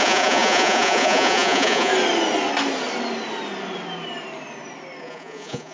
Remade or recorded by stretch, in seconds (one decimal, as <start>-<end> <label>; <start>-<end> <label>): 0.0-1.9 remade; 1.9-5.0 recorded; 5.0-5.7 remade